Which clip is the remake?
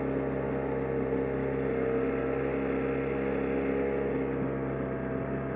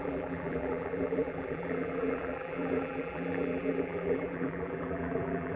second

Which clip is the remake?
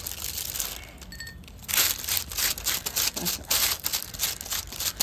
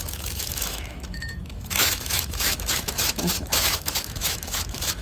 second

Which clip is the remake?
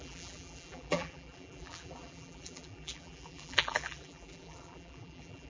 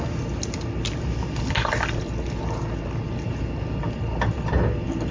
first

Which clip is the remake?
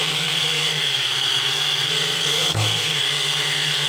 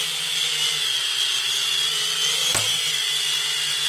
first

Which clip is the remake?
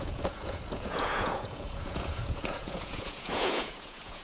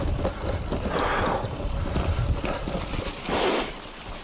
first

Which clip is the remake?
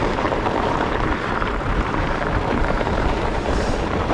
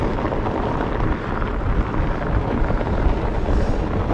first